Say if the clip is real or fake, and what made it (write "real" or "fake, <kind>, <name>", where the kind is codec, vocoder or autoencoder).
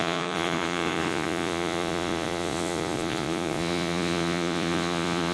fake, vocoder, Vocos